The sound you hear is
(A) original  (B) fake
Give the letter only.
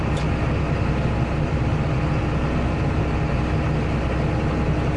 A